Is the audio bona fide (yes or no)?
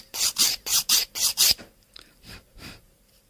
no